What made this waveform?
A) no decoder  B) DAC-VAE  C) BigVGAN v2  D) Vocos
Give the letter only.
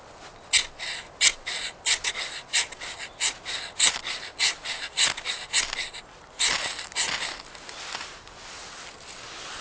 A